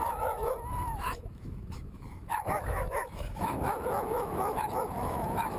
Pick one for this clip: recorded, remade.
remade